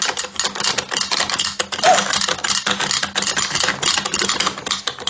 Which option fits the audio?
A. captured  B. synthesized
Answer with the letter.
A